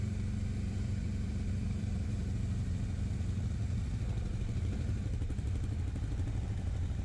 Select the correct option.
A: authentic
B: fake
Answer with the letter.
A